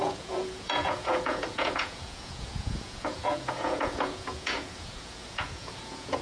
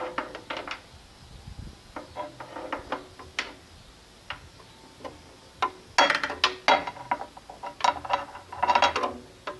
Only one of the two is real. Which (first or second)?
second